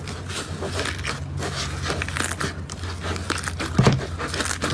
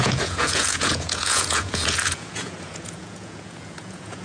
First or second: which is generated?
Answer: second